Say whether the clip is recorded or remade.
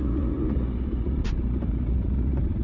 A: remade